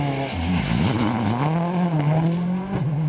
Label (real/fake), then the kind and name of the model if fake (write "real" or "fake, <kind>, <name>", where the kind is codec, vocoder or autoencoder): real